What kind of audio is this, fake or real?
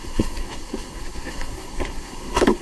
fake